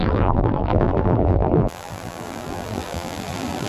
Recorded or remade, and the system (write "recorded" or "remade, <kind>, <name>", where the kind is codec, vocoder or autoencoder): remade, vocoder, BigVGAN v2